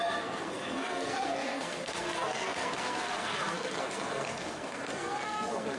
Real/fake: fake